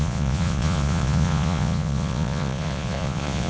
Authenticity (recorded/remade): remade